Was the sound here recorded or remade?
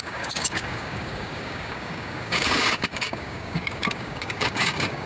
remade